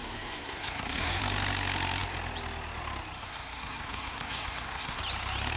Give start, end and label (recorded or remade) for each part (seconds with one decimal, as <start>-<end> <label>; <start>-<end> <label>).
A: 0.0-1.2 remade; 1.2-3.2 recorded; 3.2-5.0 remade; 5.0-5.6 recorded

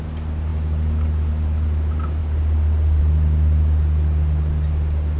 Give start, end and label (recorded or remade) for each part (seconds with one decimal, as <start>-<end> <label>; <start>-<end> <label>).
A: 0.0-5.2 recorded

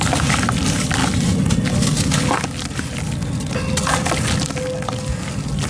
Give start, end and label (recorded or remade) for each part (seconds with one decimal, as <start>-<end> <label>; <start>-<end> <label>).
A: 0.0-5.7 recorded

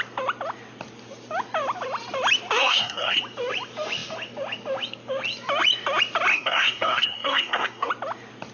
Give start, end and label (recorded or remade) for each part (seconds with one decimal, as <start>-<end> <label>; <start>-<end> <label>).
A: 0.0-2.6 recorded; 2.6-3.2 remade; 3.2-6.3 recorded; 6.3-7.9 remade; 7.9-8.5 recorded

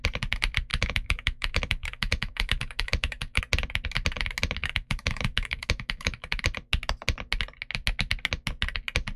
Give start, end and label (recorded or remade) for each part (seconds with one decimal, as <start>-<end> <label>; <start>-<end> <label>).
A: 0.0-0.7 recorded; 0.7-3.4 remade; 3.4-4.6 recorded; 4.6-6.4 remade; 6.4-9.2 recorded

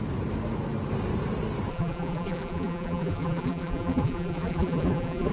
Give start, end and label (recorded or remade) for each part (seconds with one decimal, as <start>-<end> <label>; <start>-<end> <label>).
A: 0.0-1.7 recorded; 1.7-5.3 remade

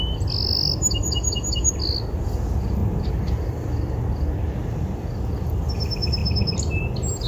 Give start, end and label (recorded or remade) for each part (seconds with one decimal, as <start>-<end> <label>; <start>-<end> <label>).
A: 0.0-7.3 recorded